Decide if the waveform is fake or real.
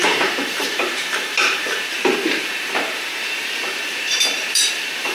fake